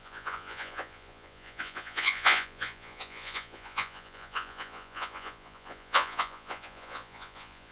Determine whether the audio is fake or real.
fake